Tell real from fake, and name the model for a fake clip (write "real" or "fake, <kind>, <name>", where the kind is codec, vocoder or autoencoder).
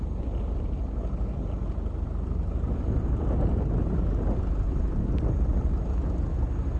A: fake, vocoder, BigVGAN v2